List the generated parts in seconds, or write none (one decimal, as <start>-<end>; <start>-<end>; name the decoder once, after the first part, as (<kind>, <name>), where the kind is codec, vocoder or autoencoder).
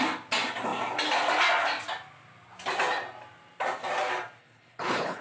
4.4-5.2 (codec, HILCodec)